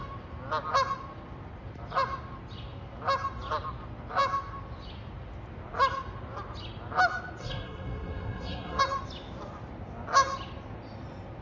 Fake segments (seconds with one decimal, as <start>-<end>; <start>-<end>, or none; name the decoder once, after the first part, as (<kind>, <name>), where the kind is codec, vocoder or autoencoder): 7.4-8.8 (codec, SNAC)